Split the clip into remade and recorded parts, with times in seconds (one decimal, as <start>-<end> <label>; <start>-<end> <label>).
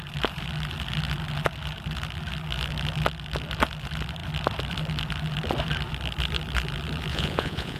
0.0-7.1 recorded; 7.1-7.8 remade